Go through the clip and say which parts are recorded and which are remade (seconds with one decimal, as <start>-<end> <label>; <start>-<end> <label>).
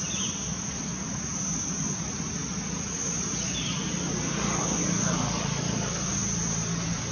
0.0-7.1 recorded